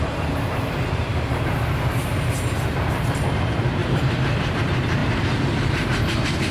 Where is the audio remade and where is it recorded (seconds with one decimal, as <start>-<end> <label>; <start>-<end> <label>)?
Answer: 0.0-1.1 recorded; 1.1-3.0 remade; 3.0-3.8 recorded; 3.8-4.6 remade; 4.6-5.0 recorded; 5.0-6.5 remade